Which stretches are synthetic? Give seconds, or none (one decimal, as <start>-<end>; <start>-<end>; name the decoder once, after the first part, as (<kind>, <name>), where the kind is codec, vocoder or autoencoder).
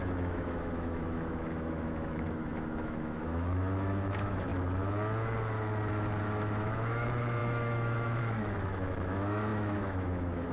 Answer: 0.0-4.5 (autoencoder, DAC-VAE); 6.2-10.5